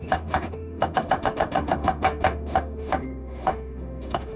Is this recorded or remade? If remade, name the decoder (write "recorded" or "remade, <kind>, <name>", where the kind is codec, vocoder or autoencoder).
remade, autoencoder, DAC-VAE